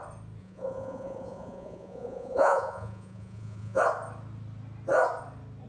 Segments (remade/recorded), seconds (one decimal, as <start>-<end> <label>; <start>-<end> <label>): 0.0-0.4 recorded; 0.4-3.8 remade; 3.8-5.7 recorded